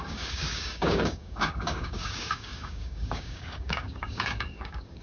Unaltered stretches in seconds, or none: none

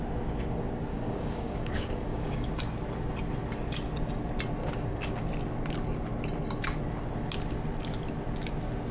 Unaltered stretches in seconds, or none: 0.0-0.9; 2.5-4.6; 5.2-8.9

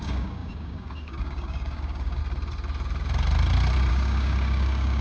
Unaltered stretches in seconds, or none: 2.2-3.9

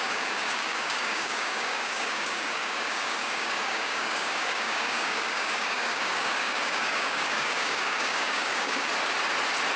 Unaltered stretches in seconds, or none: 8.9-9.8